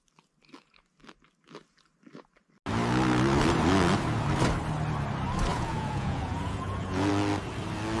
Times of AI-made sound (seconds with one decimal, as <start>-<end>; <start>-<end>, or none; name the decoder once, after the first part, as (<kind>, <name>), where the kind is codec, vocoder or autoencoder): 5.5-7.1 (vocoder, Vocos)